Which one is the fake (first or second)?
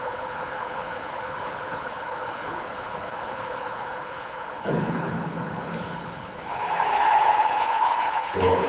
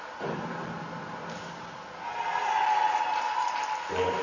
first